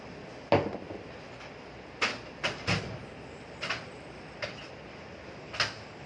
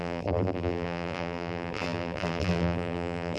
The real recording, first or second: first